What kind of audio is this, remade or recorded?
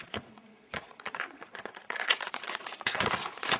remade